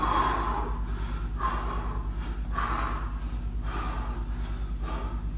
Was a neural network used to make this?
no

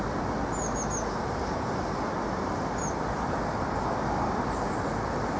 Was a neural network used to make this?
no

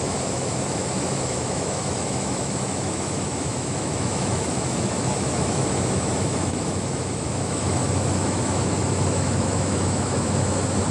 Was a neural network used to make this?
yes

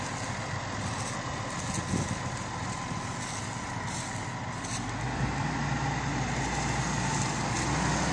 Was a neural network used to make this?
no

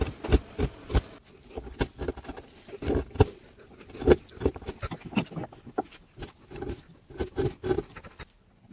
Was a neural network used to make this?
no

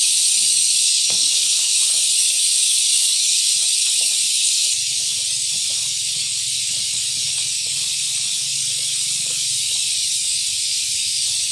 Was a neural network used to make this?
yes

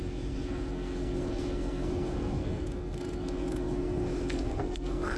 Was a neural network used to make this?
yes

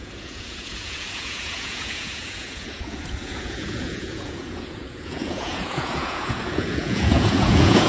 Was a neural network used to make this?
yes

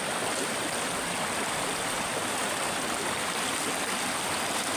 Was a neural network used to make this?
yes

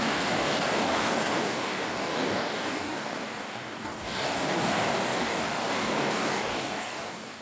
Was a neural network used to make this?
yes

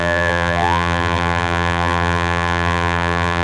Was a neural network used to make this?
yes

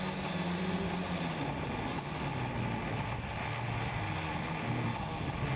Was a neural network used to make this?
no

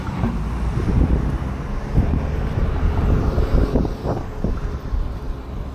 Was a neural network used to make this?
no